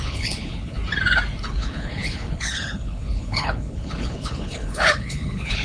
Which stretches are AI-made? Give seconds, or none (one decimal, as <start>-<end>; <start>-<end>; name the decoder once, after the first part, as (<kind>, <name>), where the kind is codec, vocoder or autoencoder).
0.0-0.8 (codec, HILCodec); 1.5-5.6